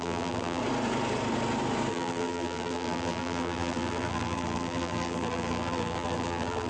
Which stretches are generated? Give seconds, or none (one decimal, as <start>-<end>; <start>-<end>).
0.0-0.6; 1.9-6.7